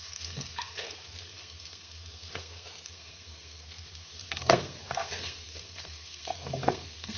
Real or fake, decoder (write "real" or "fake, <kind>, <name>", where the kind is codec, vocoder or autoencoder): fake, codec, SNAC